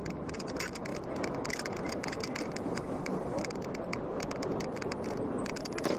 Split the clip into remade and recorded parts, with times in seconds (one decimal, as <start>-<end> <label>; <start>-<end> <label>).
0.0-6.0 recorded